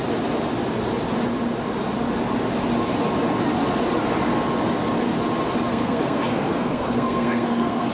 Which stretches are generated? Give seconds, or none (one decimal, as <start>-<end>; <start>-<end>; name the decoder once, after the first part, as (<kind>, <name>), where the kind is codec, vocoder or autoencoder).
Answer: 5.7-7.9 (codec, SNAC)